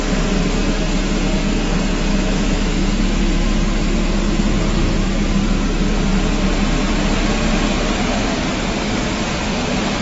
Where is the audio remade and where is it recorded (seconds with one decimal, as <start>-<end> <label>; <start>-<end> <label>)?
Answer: 0.0-2.1 recorded; 2.1-3.2 remade; 3.2-10.0 recorded